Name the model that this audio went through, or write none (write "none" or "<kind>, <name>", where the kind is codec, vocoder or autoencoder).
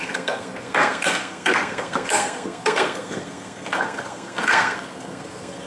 codec, SNAC